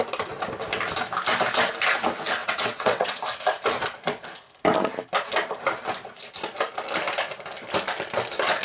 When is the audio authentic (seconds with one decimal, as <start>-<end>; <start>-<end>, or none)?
0.0-2.4; 3.2-8.6